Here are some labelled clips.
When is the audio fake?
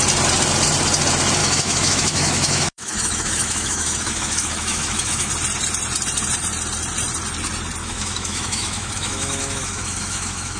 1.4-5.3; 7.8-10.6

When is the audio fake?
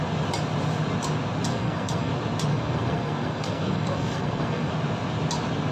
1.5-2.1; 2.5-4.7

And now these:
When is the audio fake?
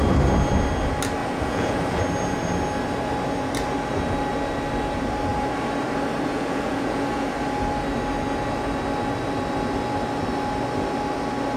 1.2-2.0; 6.3-7.3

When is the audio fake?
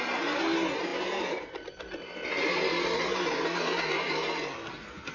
none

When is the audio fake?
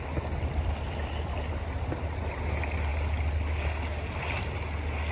none